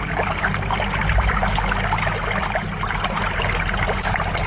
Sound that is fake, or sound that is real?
real